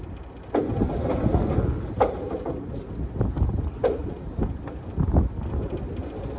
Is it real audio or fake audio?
real